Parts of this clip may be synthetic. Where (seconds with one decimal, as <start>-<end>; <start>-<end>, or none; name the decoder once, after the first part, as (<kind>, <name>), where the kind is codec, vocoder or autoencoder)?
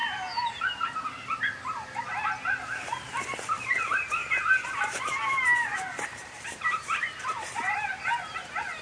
3.4-4.2 (vocoder, BigVGAN v2); 4.8-8.8